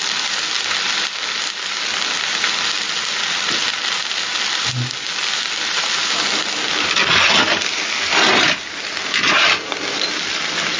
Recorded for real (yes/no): yes